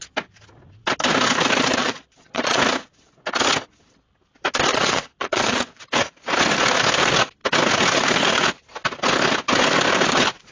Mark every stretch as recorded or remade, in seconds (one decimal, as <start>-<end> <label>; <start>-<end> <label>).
0.0-1.8 recorded; 1.8-2.6 remade; 2.6-4.7 recorded; 4.7-5.8 remade; 5.8-10.5 recorded